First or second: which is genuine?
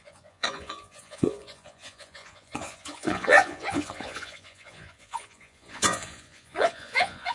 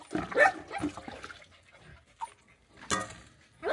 second